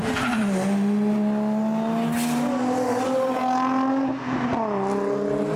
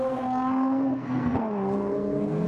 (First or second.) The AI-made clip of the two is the second